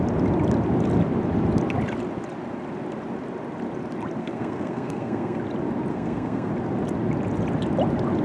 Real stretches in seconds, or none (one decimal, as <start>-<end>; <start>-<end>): 0.0-4.2; 5.4-5.9; 6.5-8.2